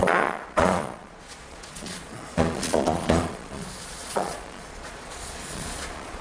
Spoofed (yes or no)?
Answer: yes